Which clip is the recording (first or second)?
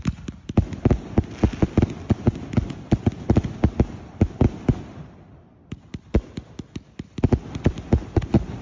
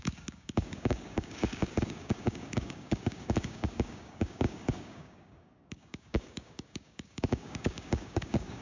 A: first